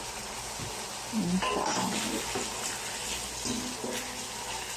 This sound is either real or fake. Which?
real